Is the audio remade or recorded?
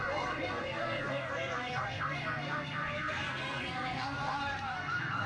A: remade